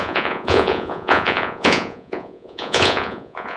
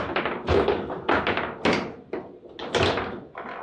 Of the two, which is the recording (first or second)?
second